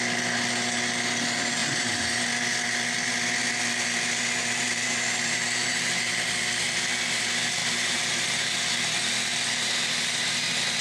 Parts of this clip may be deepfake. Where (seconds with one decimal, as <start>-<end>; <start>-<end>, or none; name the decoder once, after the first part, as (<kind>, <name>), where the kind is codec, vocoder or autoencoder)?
1.6-2.3 (vocoder, BigVGAN v2); 4.4-6.1; 7.6-8.2